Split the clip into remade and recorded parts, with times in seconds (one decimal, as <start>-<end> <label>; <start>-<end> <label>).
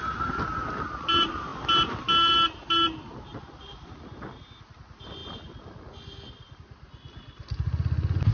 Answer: 0.0-8.3 recorded